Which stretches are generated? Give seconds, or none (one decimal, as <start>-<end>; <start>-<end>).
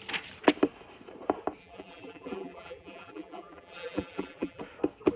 1.6-4.6